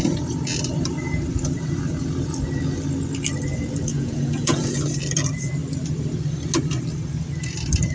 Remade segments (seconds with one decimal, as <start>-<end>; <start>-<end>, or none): 3.9-4.8